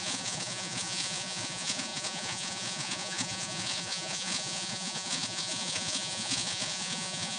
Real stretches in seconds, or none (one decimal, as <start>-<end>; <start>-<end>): none